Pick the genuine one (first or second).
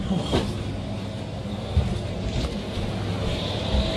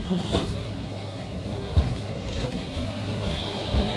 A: first